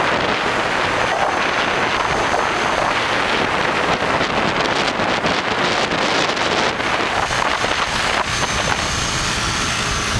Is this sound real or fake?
real